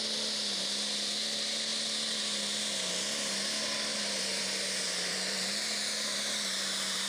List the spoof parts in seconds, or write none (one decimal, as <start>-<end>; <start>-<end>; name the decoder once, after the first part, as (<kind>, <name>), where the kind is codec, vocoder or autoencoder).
3.9-7.1 (vocoder, BigVGAN v2)